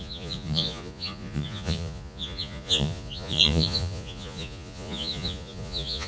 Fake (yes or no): yes